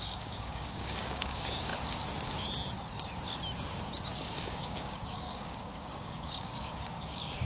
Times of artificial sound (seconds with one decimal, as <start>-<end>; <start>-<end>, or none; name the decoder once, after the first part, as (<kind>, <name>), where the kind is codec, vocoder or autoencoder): 0.0-1.7 (codec, DAC); 4.4-7.4